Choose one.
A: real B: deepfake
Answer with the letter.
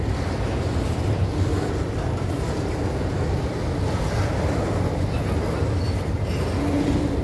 A